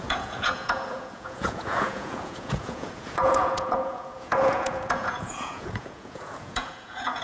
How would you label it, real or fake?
fake